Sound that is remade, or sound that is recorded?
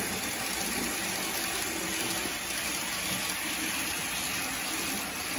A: recorded